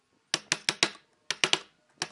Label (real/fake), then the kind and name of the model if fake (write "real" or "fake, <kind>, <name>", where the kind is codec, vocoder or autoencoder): real